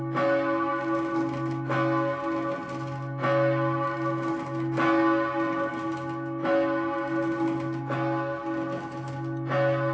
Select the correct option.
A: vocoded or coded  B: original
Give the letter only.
B